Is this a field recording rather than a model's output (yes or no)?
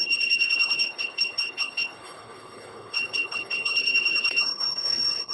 no